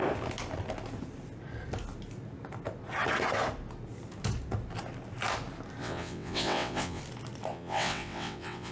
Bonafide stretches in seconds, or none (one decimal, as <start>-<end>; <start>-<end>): 0.0-5.8; 7.0-7.5